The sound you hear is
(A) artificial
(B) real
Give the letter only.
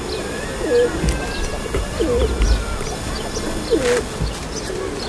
B